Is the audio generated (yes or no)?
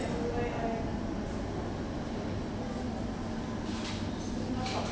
no